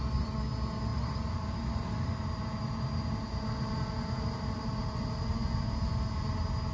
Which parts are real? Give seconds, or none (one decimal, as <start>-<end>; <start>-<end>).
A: 0.0-0.9; 2.1-3.3; 5.3-6.7